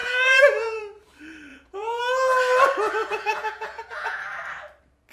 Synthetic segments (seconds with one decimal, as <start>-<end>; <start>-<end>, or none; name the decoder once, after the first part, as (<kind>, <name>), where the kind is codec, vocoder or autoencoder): 0.0-0.8 (vocoder, Vocos); 1.5-2.0; 3.0-4.2